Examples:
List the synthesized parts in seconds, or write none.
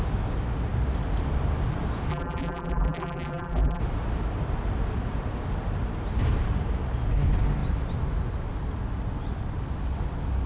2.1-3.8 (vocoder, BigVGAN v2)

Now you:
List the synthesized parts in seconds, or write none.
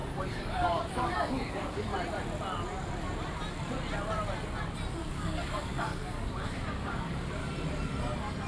0.0-1.9 (codec, DAC); 5.1-7.4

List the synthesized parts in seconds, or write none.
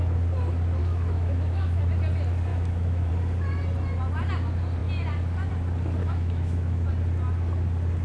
0.8-1.8 (autoencoder, DAC-VAE); 2.5-3.1; 6.0-6.9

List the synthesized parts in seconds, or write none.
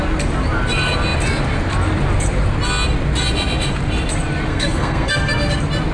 4.5-5.5 (codec, SNAC)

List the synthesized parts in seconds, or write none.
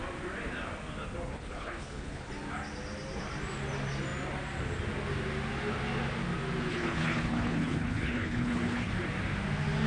1.3-2.3 (codec, HILCodec); 6.7-8.9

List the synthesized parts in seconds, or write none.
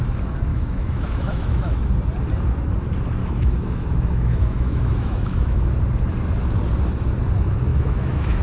0.5-1.9 (autoencoder, DAC-VAE); 3.2-5.6; 7.7-8.4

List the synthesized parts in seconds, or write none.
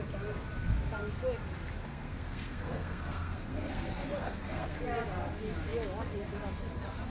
1.9-4.8 (codec, SNAC)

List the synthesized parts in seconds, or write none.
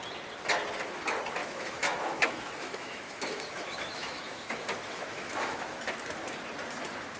1.4-5.7 (autoencoder, DAC-VAE)